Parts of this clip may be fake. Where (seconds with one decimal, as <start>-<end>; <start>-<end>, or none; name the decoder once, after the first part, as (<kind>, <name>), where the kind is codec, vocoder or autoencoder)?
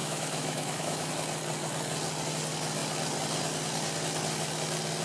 0.0-1.1 (autoencoder, DAC-VAE)